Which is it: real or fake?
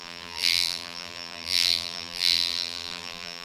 fake